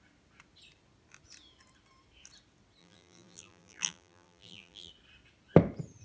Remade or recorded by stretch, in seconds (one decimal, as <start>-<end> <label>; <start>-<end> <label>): 0.0-2.8 recorded; 2.8-4.9 remade; 4.9-6.0 recorded